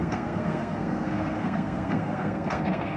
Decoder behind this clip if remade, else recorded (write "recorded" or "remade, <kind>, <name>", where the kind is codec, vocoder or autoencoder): remade, codec, SNAC